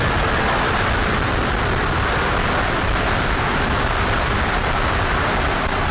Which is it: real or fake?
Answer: real